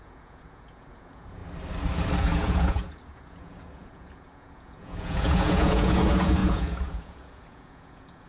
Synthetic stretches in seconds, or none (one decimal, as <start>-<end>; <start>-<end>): 0.0-1.4; 2.2-8.3